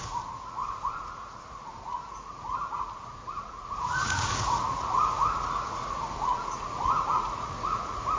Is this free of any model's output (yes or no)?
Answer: no